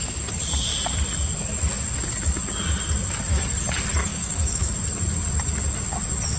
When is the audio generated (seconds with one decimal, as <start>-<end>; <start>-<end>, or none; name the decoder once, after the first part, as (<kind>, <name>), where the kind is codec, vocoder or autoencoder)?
4.1-4.7 (autoencoder, DAC-VAE)